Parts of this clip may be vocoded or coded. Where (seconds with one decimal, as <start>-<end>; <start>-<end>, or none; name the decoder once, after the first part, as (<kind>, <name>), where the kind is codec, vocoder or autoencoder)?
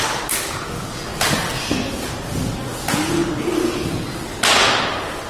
none